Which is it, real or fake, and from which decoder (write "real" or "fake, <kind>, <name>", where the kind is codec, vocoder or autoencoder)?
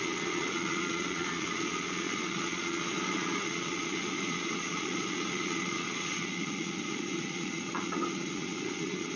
fake, vocoder, Vocos